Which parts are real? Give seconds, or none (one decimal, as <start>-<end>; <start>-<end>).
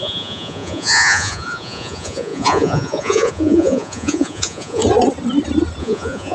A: 4.8-5.8